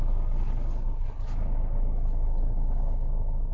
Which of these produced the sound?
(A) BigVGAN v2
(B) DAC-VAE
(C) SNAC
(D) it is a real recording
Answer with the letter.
D